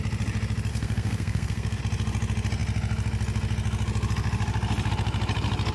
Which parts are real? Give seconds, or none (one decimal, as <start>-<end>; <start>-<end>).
0.0-0.7; 1.8-5.7